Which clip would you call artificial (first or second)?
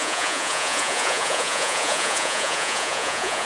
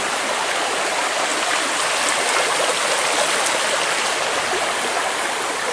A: first